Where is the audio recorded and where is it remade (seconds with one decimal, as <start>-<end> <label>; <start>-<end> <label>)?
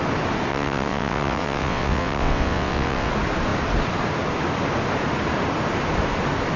0.0-0.5 recorded; 0.5-3.1 remade; 3.1-6.6 recorded